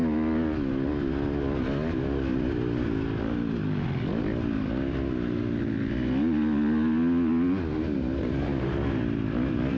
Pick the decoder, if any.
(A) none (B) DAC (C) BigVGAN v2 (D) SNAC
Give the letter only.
A